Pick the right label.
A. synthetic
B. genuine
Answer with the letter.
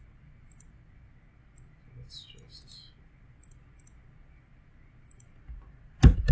B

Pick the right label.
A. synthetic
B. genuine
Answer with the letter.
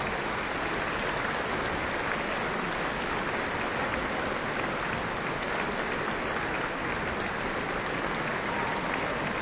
B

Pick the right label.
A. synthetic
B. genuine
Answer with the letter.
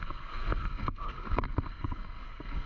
A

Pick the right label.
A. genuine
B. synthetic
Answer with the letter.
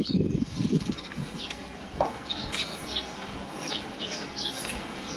B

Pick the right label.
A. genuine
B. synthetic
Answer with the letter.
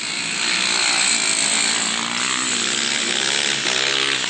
A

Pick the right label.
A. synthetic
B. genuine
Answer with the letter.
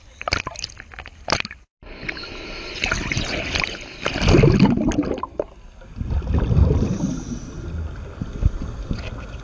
B